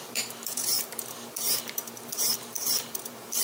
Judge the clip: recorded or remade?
remade